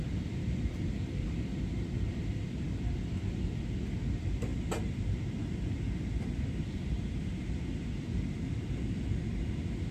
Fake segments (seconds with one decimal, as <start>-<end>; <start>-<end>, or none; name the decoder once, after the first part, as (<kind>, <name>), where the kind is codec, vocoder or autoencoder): 0.0-4.5 (vocoder, BigVGAN v2); 5.3-9.9

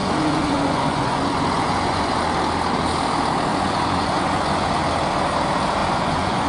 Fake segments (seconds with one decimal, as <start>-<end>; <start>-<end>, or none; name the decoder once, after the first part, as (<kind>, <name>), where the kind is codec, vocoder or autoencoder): 0.0-2.2 (vocoder, Vocos); 3.5-4.7; 5.8-6.5